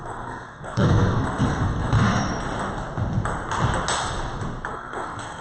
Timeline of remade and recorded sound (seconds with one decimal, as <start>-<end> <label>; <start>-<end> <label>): 0.0-2.3 remade; 2.3-4.7 recorded; 4.7-5.4 remade